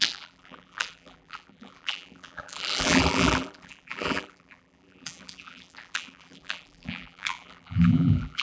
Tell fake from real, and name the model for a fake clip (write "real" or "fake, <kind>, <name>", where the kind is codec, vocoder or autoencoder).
fake, vocoder, BigVGAN v2